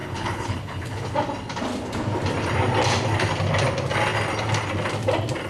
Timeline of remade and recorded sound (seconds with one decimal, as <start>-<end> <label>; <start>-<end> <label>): 0.0-1.1 remade; 1.1-5.5 recorded